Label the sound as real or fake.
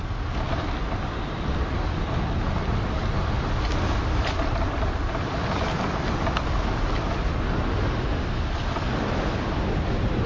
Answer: real